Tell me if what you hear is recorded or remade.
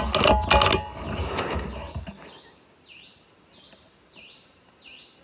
recorded